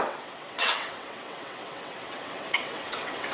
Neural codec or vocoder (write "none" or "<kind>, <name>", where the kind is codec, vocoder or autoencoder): vocoder, WaveNeXt